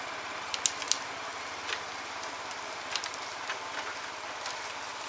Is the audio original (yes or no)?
yes